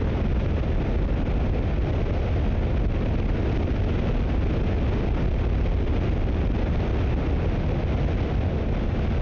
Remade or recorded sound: recorded